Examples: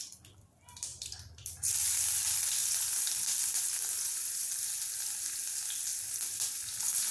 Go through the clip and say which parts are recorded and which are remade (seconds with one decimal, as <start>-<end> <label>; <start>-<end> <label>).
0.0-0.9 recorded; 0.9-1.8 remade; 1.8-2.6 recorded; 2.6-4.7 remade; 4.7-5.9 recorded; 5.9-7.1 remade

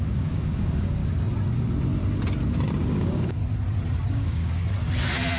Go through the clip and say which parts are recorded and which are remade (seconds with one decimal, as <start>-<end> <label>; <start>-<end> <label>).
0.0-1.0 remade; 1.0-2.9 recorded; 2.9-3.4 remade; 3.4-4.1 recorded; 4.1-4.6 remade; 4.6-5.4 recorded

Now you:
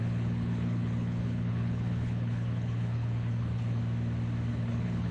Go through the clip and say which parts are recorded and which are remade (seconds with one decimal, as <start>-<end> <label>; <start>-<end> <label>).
0.0-3.8 remade; 3.8-4.5 recorded; 4.5-5.1 remade